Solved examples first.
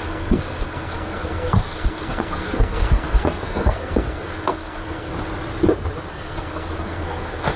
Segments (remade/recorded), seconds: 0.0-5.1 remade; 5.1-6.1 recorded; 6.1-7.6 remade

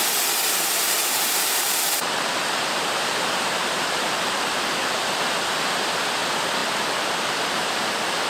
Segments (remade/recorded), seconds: 0.0-1.0 recorded; 1.0-4.8 remade; 4.8-8.3 recorded

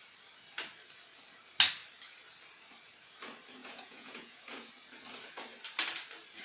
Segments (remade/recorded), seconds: 0.0-3.6 recorded; 3.6-4.7 remade; 4.7-6.4 recorded

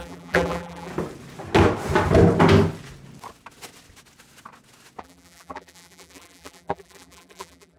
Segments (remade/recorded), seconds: 0.0-0.9 remade; 0.9-5.0 recorded; 5.0-7.8 remade